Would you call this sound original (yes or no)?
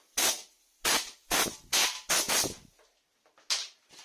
yes